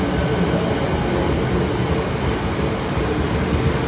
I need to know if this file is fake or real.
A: real